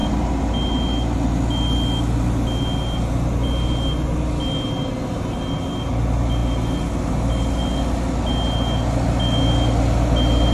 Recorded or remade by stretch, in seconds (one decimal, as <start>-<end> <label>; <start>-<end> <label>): 0.0-10.5 recorded